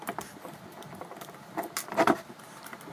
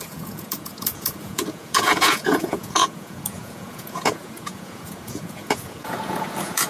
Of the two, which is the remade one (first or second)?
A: second